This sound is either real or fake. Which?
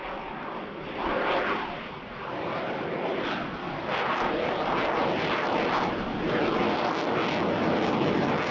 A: real